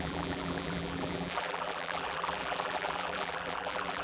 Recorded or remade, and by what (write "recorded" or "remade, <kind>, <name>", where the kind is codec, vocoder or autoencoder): remade, vocoder, BigVGAN v2